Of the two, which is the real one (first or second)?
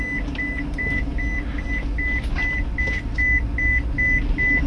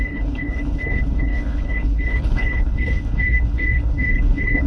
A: first